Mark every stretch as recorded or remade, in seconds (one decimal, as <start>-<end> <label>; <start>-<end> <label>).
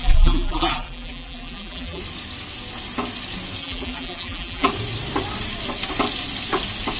0.0-2.0 remade; 2.0-3.6 recorded; 3.6-4.7 remade; 4.7-7.0 recorded